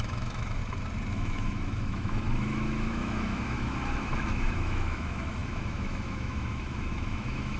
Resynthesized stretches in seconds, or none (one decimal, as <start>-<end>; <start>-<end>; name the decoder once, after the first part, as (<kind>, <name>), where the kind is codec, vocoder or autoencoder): 0.0-0.6 (autoencoder, DAC-VAE); 1.1-7.6